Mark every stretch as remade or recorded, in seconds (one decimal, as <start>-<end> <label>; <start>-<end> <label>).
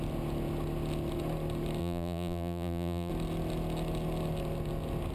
0.0-1.8 recorded; 1.8-3.1 remade; 3.1-5.1 recorded